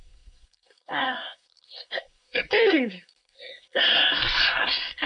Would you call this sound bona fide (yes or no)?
no